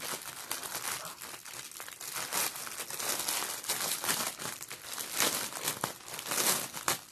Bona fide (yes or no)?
yes